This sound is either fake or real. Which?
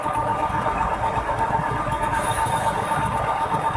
fake